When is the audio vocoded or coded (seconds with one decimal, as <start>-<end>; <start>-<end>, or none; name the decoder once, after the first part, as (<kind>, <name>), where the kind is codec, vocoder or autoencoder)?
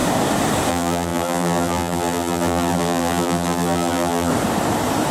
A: 0.7-4.3 (vocoder, BigVGAN v2)